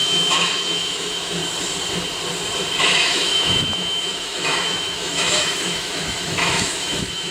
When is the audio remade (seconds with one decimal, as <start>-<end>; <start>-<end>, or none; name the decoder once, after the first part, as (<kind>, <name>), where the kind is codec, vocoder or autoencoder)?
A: 0.0-1.4 (autoencoder, DAC-VAE); 2.8-7.3